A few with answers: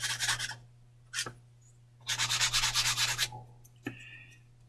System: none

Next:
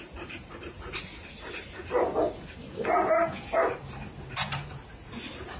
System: none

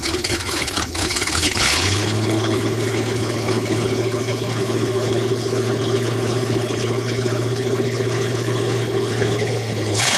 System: codec, HILCodec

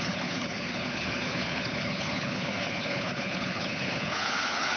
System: codec, HILCodec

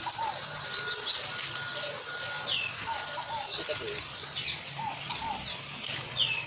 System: none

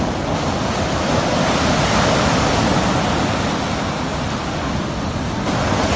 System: none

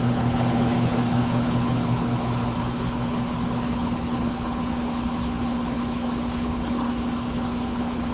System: codec, HILCodec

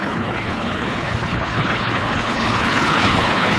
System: codec, HILCodec